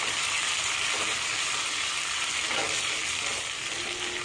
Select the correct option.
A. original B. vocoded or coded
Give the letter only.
A